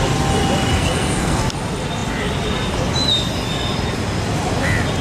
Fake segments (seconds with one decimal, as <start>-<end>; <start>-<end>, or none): 0.7-1.4